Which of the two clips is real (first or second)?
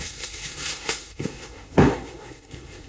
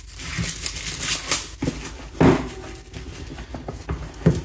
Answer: second